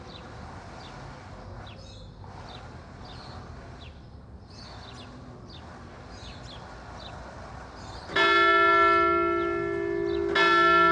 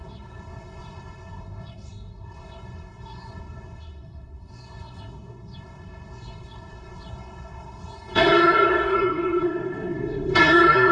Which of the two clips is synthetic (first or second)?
second